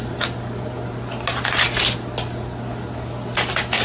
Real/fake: real